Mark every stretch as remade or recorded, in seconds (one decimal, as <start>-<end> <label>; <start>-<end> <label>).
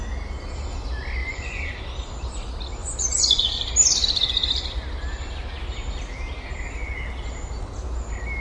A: 0.0-1.2 recorded; 1.2-1.8 remade; 1.8-2.8 recorded; 2.8-3.6 remade; 3.6-8.4 recorded